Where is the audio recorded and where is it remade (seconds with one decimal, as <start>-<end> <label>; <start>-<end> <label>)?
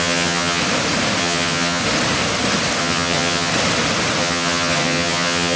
0.0-0.6 remade; 0.6-1.2 recorded; 1.2-1.8 remade; 1.8-2.8 recorded; 2.8-3.5 remade; 3.5-4.2 recorded; 4.2-5.6 remade